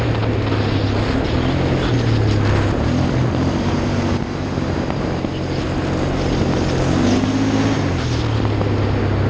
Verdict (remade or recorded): recorded